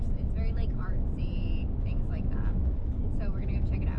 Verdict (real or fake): real